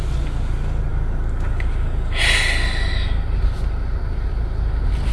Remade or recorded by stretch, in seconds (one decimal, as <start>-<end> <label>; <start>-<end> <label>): 0.0-5.1 recorded